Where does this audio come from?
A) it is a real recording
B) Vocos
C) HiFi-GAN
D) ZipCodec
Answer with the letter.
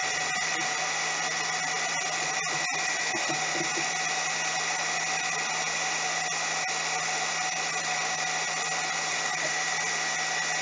A